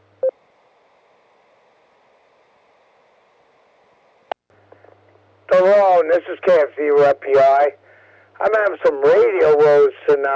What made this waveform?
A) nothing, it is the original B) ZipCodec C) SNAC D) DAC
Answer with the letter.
A